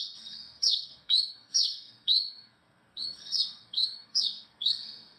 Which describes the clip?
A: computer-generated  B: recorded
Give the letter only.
A